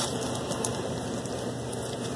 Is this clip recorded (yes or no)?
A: yes